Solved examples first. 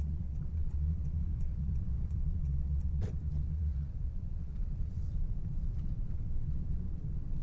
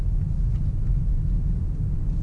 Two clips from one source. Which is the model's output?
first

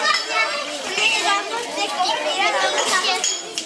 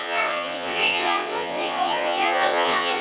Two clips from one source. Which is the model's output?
second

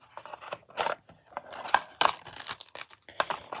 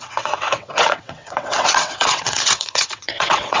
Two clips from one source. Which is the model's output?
second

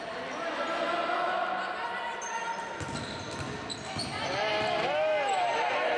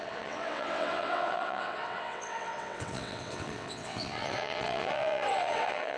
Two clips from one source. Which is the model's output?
second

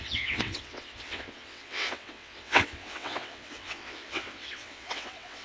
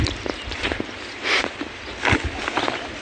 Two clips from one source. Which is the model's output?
first